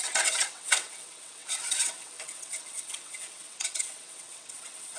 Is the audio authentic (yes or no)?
no